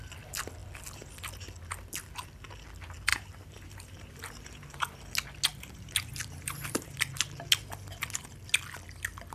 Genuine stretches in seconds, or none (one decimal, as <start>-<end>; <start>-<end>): 0.0-3.1; 5.0-5.5; 7.1-9.3